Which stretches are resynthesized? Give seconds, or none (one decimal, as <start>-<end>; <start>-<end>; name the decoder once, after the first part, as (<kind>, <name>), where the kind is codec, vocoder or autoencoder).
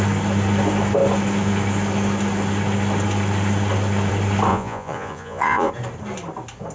4.5-5.7 (vocoder, Vocos)